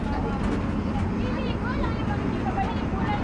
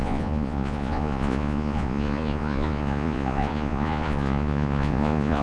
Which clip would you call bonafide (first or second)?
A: first